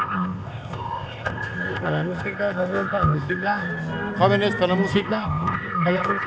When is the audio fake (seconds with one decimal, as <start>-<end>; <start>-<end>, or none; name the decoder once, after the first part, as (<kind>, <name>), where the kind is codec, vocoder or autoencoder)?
0.0-3.7 (codec, ZipCodec); 4.9-6.3

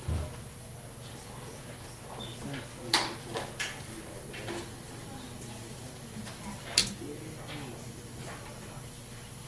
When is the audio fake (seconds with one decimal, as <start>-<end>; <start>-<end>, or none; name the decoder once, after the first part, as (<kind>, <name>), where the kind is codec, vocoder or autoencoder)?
none

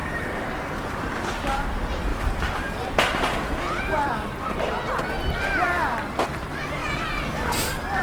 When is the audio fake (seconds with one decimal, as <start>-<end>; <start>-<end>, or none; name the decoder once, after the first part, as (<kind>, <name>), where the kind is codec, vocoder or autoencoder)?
0.0-1.1 (vocoder, BigVGAN v2); 2.1-4.1

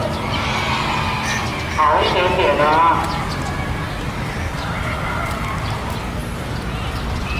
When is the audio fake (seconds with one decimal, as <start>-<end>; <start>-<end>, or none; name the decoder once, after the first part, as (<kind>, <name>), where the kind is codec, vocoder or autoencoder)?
none

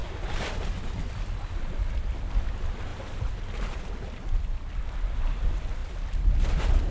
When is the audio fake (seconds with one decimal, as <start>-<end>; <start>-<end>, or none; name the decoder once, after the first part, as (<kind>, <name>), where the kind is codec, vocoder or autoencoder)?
none

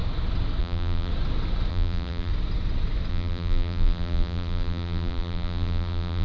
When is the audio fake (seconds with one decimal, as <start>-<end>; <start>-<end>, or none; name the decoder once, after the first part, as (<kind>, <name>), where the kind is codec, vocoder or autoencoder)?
0.6-1.1 (vocoder, BigVGAN v2); 1.7-2.3; 3.1-6.2

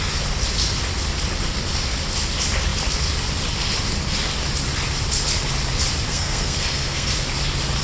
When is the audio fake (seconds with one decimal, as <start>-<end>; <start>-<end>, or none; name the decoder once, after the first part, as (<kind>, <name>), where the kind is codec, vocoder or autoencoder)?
6.1-7.1 (codec, SNAC)

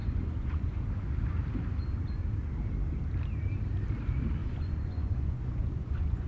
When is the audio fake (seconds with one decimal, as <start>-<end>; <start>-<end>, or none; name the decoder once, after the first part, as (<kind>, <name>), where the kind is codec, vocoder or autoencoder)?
0.0-0.8 (vocoder, Vocos); 4.4-6.3